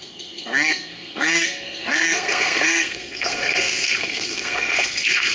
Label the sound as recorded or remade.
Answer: remade